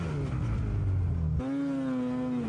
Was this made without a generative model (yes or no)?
yes